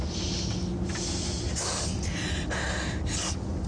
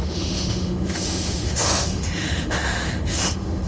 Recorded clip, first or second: first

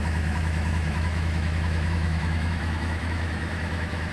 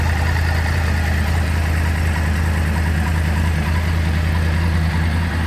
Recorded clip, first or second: second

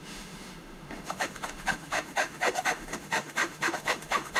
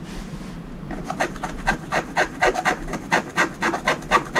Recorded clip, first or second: second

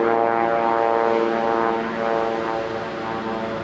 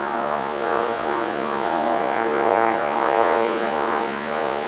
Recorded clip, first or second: first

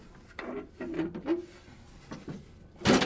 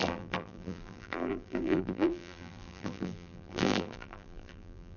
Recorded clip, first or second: first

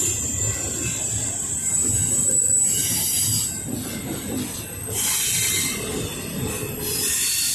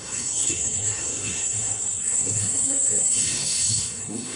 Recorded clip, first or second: first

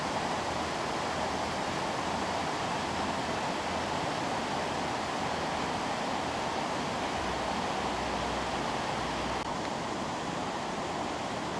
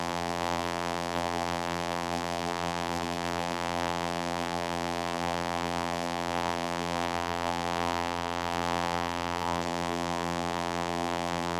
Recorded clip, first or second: first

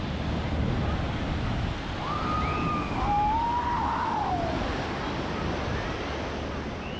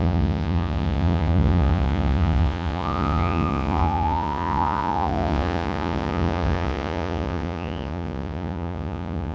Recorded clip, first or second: first